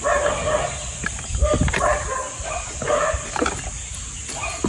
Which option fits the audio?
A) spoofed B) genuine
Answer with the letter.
B